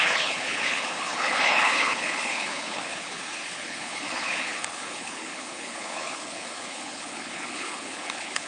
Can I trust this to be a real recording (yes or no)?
no